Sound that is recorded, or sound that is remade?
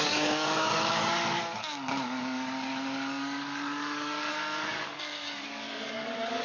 remade